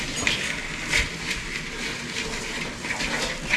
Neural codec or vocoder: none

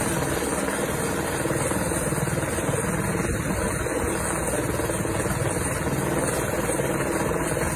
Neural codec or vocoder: none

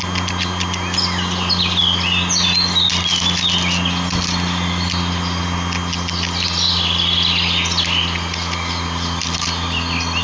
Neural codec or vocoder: none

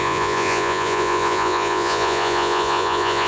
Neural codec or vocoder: vocoder, Vocos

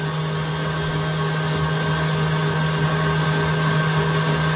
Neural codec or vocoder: none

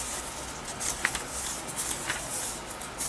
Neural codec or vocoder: none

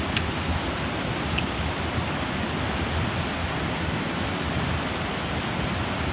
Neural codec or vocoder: none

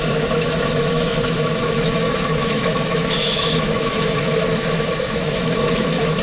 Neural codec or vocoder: autoencoder, DAC-VAE